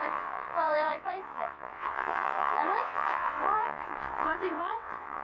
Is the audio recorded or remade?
remade